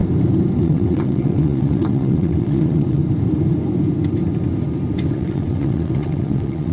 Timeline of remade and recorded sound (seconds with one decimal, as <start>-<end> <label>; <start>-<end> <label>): 0.0-0.6 recorded; 0.6-3.0 remade; 3.0-5.1 recorded; 5.1-6.7 remade